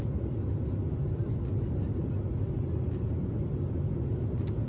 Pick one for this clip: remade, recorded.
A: recorded